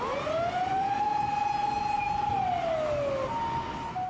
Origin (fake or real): real